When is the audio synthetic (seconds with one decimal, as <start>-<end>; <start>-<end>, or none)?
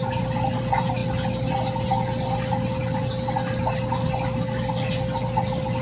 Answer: none